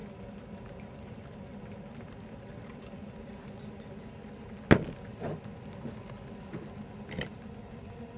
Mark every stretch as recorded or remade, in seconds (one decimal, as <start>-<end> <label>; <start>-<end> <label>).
0.0-3.0 remade; 3.0-8.2 recorded

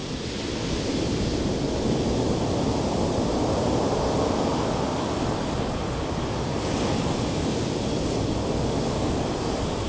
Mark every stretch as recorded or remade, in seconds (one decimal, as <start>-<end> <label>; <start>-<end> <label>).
0.0-9.9 recorded

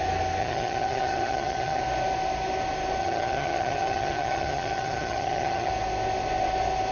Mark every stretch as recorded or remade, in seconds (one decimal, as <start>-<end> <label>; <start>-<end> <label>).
0.0-0.4 recorded; 0.4-1.8 remade; 1.8-3.0 recorded; 3.0-5.7 remade; 5.7-6.9 recorded

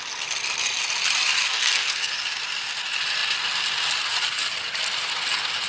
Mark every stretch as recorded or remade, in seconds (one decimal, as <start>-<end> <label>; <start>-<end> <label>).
0.0-1.4 recorded; 1.4-2.1 remade; 2.1-5.7 recorded